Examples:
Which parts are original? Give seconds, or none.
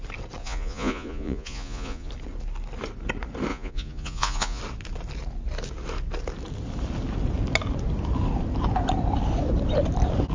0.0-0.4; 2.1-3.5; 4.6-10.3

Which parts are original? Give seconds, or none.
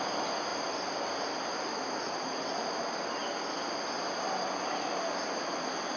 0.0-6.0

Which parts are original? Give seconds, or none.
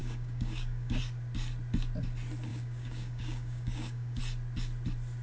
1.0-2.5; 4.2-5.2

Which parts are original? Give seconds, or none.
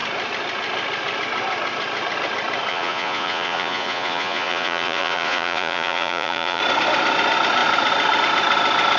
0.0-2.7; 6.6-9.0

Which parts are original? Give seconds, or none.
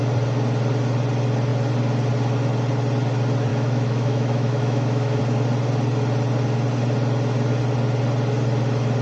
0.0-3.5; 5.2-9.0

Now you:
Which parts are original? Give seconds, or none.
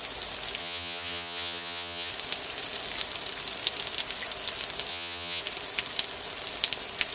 0.0-0.6; 2.1-4.9; 5.4-7.1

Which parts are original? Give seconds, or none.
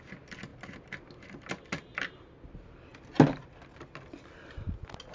0.0-5.1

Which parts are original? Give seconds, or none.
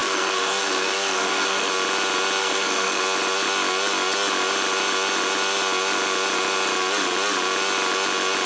1.7-2.4; 3.0-8.5